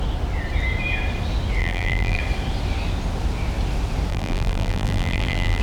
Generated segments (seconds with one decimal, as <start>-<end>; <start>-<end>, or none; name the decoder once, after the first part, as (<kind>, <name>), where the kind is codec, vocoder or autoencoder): 1.6-2.2 (vocoder, BigVGAN v2); 4.1-5.6